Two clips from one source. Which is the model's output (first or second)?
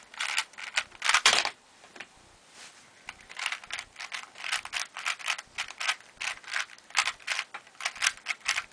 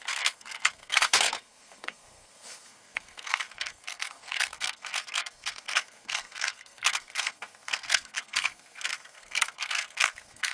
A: second